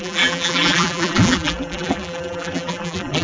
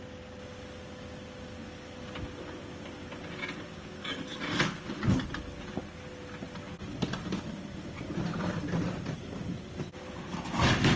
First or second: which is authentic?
second